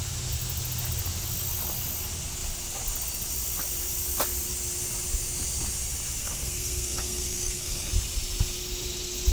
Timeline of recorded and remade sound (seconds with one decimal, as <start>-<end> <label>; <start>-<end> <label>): 0.0-6.2 recorded; 6.2-7.9 remade; 7.9-9.3 recorded